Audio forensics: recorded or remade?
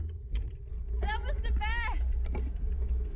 recorded